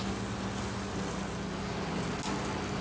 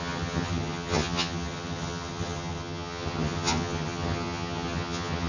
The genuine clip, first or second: first